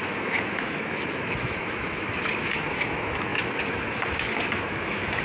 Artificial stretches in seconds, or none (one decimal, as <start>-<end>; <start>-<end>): 0.0-5.2